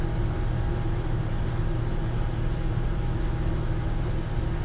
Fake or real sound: real